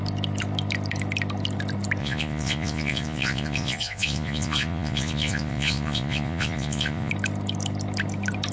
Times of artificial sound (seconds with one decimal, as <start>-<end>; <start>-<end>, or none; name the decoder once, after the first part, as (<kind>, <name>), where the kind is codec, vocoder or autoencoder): 2.0-7.1 (vocoder, Vocos)